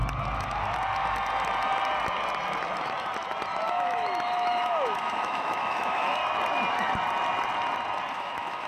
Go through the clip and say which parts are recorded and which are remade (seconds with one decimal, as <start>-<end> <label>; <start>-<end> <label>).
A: 0.0-3.7 recorded; 3.7-6.2 remade; 6.2-8.1 recorded; 8.1-8.7 remade